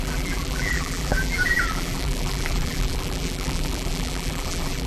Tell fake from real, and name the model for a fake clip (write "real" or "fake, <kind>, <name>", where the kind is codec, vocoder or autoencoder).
fake, vocoder, BigVGAN v2